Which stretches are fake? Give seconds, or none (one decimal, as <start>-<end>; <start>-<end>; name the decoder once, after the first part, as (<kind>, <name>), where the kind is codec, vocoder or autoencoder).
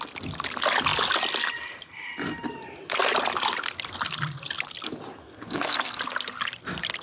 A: 5.2-6.0 (codec, SNAC)